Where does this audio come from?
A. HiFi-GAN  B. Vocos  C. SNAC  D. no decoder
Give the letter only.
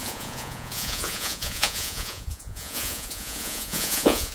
B